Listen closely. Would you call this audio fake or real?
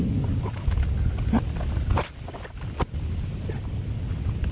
real